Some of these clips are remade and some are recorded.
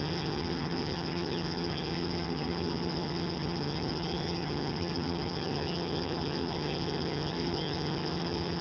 remade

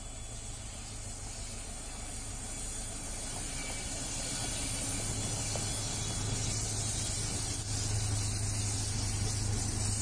recorded